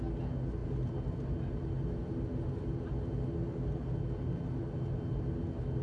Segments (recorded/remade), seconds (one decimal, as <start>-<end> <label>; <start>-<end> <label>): 0.0-5.8 recorded